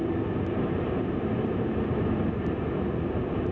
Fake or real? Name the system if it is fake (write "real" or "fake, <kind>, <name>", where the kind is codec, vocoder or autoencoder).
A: real